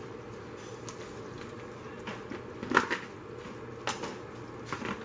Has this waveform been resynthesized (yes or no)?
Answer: no